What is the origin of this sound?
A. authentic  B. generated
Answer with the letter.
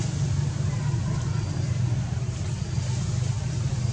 A